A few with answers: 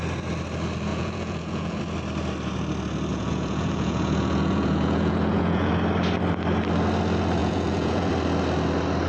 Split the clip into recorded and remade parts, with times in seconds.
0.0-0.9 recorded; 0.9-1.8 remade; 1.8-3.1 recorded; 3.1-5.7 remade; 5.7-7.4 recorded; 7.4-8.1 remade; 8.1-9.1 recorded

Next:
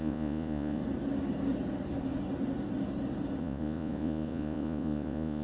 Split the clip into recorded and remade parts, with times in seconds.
0.0-0.8 remade; 0.8-3.4 recorded; 3.4-5.4 remade

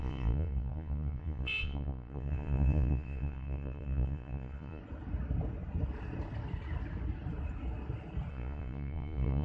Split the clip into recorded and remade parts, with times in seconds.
0.0-4.8 remade; 4.8-8.3 recorded; 8.3-9.4 remade